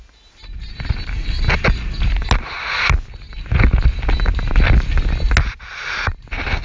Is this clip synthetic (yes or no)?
no